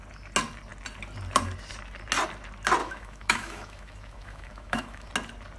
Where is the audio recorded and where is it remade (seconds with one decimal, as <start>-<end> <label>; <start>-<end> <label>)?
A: 0.0-2.8 recorded; 2.8-5.1 remade; 5.1-5.6 recorded